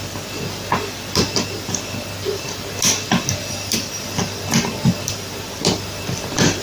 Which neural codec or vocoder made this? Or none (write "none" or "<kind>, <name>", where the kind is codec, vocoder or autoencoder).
none